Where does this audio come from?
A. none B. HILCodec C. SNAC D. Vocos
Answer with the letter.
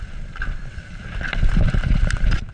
A